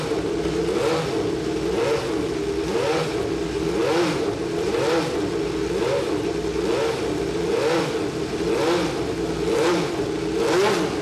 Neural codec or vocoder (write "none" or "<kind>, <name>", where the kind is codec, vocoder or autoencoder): none